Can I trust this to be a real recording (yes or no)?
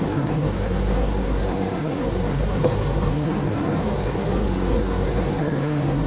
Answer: no